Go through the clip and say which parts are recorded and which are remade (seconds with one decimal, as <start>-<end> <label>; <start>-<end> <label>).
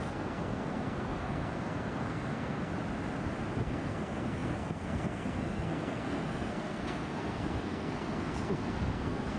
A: 0.0-2.7 remade; 2.7-3.6 recorded; 3.6-9.4 remade